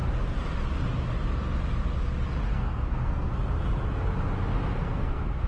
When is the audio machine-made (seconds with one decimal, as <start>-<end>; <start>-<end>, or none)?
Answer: 2.5-3.3; 4.5-5.5